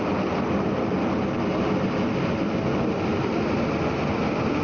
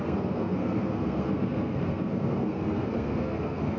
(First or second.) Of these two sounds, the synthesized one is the second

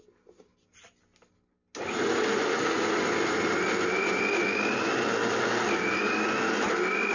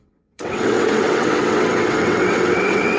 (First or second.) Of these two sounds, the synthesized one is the second